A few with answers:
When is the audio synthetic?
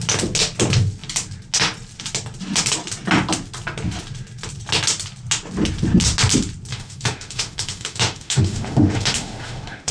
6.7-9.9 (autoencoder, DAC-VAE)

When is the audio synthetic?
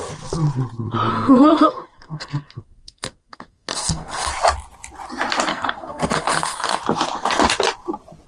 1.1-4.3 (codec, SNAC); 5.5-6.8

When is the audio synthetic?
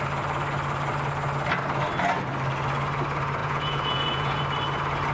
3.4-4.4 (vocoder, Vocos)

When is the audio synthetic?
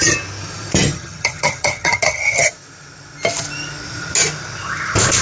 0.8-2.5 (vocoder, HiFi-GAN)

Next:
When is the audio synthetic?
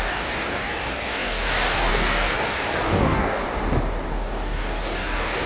0.0-3.4 (codec, DAC); 4.1-5.5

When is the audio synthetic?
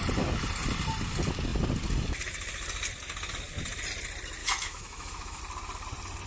4.4-5.4 (autoencoder, DAC-VAE)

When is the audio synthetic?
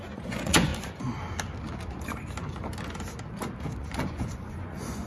0.0-0.7 (vocoder, Vocos); 3.8-5.1